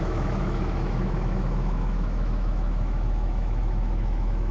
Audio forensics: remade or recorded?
remade